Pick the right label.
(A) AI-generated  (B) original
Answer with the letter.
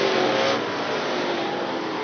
B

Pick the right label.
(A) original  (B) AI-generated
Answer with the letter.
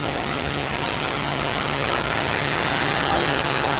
B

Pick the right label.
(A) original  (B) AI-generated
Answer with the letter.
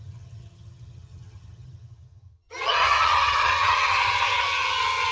B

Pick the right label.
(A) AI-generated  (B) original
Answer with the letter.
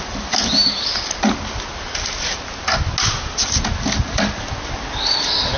B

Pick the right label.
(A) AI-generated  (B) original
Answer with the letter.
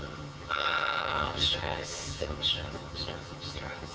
A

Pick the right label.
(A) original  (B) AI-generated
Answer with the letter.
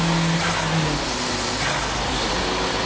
A